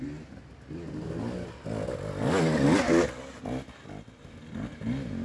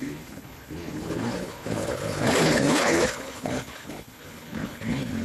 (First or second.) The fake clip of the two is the second